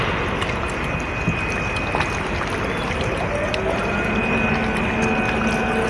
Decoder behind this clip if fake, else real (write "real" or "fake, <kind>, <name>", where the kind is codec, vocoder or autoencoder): real